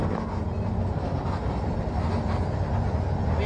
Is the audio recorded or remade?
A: recorded